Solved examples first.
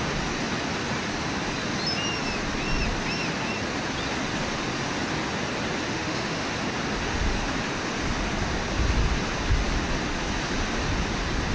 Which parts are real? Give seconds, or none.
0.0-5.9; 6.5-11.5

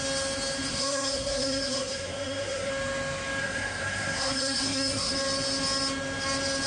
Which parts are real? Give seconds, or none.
0.0-0.7; 2.7-3.4; 5.1-6.7